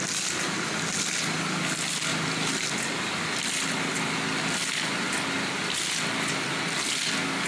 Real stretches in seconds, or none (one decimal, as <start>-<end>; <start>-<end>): 0.0-7.5